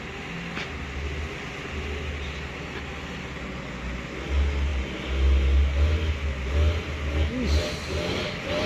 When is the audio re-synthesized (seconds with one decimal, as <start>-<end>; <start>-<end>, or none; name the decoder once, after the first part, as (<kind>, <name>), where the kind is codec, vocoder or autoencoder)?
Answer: none